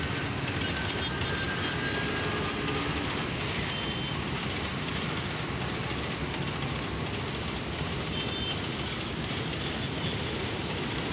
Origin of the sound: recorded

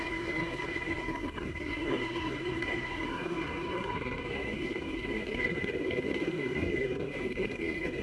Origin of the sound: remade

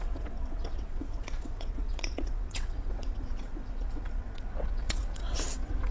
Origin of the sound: remade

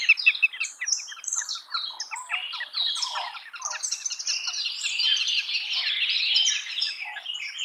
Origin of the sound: recorded